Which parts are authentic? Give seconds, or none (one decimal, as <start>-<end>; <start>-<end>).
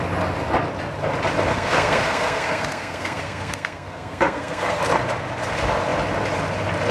0.0-1.5; 4.8-6.9